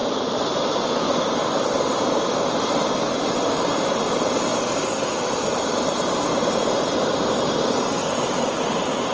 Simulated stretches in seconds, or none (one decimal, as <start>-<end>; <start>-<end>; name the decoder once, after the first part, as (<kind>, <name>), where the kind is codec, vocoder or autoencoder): none